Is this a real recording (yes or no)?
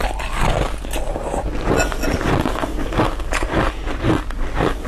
yes